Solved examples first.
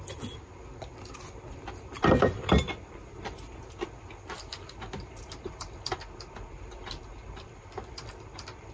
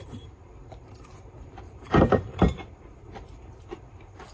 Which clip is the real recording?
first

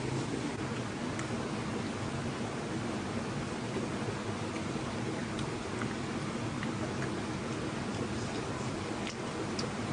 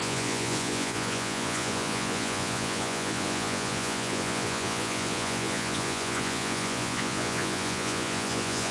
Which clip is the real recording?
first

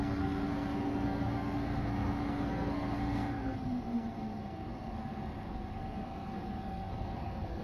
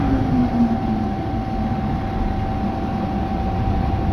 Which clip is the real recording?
second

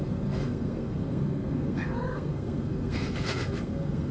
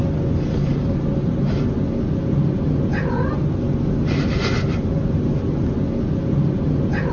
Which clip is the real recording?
second